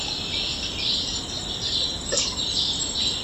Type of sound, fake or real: real